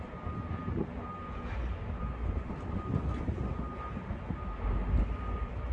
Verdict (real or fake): real